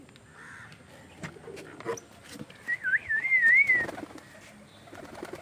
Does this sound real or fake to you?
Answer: real